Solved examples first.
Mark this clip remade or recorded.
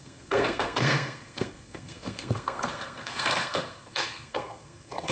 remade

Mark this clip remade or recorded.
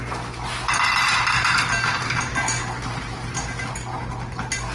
recorded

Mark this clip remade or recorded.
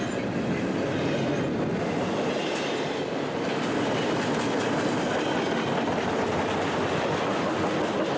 recorded